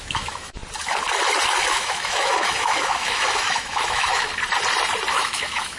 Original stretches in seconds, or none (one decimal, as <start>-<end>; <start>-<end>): 0.6-1.7; 4.3-5.1

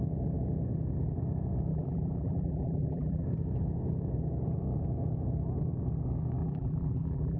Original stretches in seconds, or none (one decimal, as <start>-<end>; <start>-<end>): 0.0-1.7; 3.2-6.4

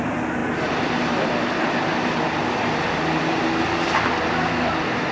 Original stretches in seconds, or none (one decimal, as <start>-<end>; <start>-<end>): 0.0-5.1

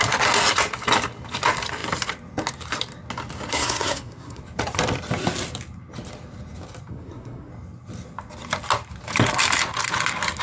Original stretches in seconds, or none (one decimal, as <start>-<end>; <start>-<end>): 0.0-3.5; 4.4-6.9; 7.5-10.4

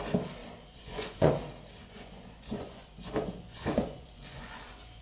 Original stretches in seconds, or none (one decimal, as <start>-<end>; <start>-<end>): 0.0-0.4; 1.3-1.8